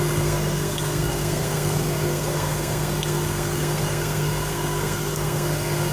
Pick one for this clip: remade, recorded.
remade